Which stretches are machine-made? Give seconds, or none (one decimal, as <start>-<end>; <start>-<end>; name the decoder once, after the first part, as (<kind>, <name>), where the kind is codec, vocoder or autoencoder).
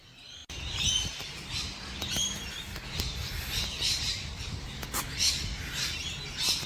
none